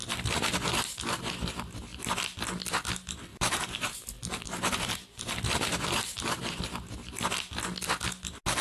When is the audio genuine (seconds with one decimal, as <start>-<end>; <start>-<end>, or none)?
0.0-3.3; 6.6-8.6